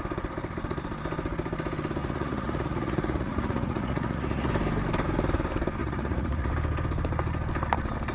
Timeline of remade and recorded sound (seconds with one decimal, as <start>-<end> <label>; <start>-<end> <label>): 0.0-2.0 recorded; 2.0-4.5 remade; 4.5-5.8 recorded; 5.8-6.5 remade; 6.5-8.1 recorded